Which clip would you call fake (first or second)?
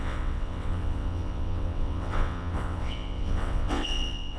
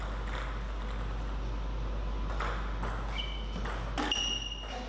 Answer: first